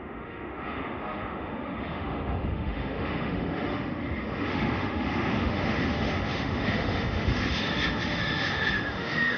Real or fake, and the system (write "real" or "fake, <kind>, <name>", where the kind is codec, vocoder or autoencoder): fake, autoencoder, DAC-VAE